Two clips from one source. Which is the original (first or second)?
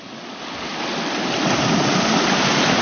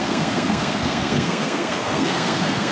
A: first